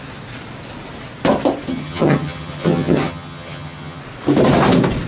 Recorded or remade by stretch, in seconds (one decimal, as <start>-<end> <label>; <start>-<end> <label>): 0.0-1.7 recorded; 1.7-4.0 remade; 4.0-5.1 recorded